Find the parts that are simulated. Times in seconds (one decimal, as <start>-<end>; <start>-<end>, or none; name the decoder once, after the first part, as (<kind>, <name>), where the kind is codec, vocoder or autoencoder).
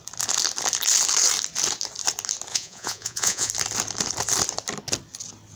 2.5-3.5 (vocoder, Vocos)